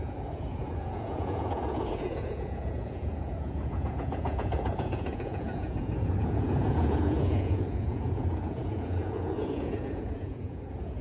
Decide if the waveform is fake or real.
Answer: fake